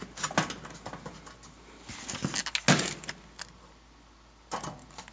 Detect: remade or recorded recorded